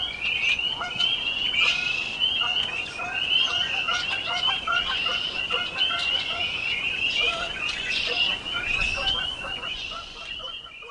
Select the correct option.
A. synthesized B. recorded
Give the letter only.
A